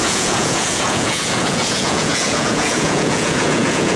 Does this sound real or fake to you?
fake